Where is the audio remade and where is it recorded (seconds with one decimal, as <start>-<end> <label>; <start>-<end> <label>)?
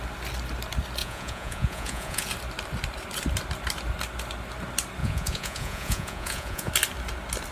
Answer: 0.0-1.0 recorded; 1.0-2.3 remade; 2.3-5.0 recorded; 5.0-6.7 remade; 6.7-7.5 recorded